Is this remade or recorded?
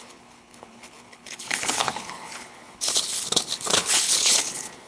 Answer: remade